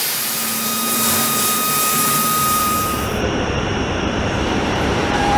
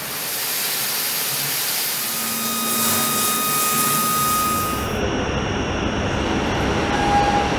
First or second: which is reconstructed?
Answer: first